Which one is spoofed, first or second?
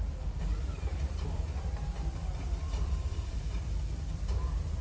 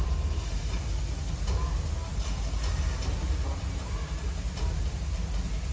first